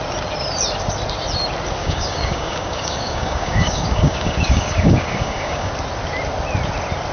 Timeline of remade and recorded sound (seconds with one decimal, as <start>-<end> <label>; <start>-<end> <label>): 0.0-1.8 recorded; 1.8-5.7 remade; 5.7-7.1 recorded

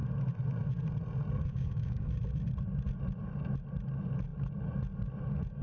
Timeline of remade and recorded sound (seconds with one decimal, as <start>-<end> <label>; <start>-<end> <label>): 0.0-1.5 recorded; 1.5-2.1 remade; 2.1-5.6 recorded

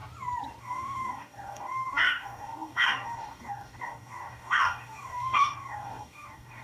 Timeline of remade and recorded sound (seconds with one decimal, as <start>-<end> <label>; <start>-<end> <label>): 0.0-0.6 recorded; 0.6-6.6 remade

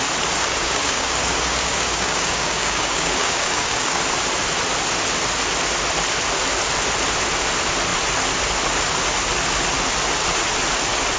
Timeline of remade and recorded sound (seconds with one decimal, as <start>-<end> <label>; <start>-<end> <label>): 0.0-0.4 recorded; 0.4-4.0 remade; 4.0-11.2 recorded

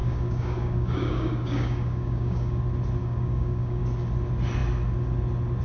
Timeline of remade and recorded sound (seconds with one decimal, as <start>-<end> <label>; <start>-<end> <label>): 0.0-2.6 remade; 2.6-3.0 recorded; 3.0-3.8 remade; 3.8-5.6 recorded